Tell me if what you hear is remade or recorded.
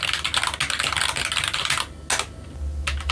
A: recorded